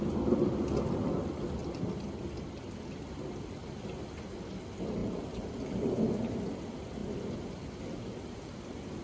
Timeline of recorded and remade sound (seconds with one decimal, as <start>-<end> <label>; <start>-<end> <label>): 0.0-5.0 recorded; 5.0-6.3 remade; 6.3-9.0 recorded